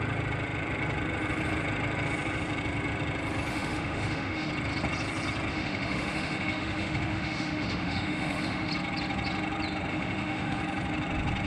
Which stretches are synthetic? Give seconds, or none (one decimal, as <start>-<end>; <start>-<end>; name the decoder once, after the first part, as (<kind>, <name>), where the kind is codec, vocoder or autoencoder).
3.5-4.5 (autoencoder, DAC-VAE); 5.5-8.7; 9.9-10.6